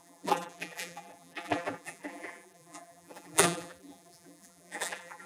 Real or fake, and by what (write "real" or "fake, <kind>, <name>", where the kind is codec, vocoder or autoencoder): fake, vocoder, BigVGAN v2